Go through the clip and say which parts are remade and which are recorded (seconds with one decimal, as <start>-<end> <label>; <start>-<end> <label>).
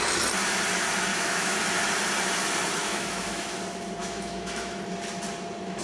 0.0-1.1 recorded; 1.1-1.6 remade; 1.6-2.8 recorded; 2.8-3.6 remade; 3.6-4.0 recorded; 4.0-4.8 remade; 4.8-5.8 recorded